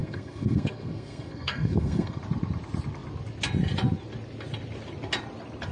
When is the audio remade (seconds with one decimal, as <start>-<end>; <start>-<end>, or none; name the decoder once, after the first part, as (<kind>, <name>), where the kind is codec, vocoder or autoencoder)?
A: 0.0-2.2 (codec, SNAC)